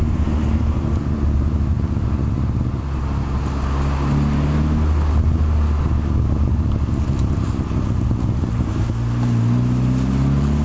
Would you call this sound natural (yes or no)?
yes